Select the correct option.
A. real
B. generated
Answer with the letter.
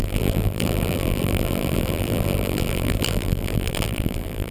B